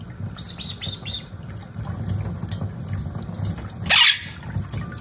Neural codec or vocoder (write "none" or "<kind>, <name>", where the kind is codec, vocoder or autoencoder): none